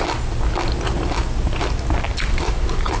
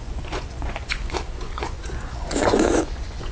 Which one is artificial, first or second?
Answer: second